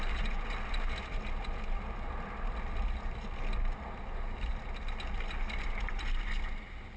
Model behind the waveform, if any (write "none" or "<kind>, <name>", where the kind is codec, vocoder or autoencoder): none